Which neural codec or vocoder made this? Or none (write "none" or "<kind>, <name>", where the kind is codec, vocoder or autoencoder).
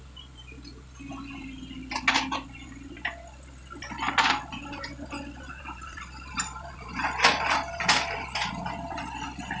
none